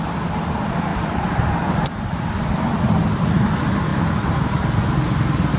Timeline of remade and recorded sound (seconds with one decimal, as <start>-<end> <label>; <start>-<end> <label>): 0.0-0.9 recorded; 0.9-2.4 remade; 2.4-3.9 recorded; 3.9-4.8 remade; 4.8-5.6 recorded